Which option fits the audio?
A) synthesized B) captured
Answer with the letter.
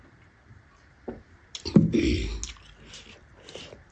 B